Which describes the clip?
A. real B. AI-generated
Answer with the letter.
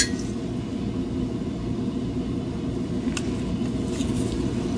A